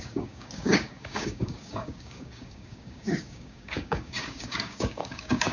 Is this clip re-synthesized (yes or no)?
yes